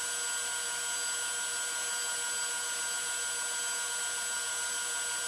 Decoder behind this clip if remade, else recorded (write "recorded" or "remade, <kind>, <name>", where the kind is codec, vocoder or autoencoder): recorded